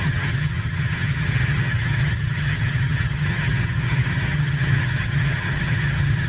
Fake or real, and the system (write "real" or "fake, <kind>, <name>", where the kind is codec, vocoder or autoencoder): fake, vocoder, HiFi-GAN